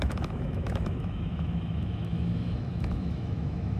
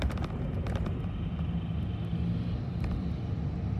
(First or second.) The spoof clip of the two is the first